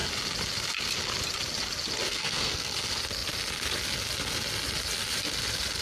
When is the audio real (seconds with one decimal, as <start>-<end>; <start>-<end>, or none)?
0.0-2.1; 2.7-5.8